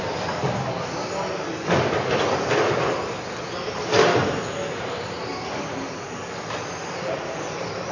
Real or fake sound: real